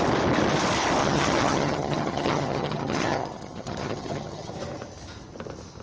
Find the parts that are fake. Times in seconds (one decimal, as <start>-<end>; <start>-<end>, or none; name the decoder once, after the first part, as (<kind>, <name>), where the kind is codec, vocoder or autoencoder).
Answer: 1.0-4.5 (vocoder, HiFi-GAN)